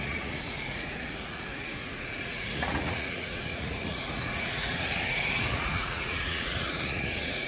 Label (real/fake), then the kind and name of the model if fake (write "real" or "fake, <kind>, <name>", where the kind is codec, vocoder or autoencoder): fake, vocoder, Vocos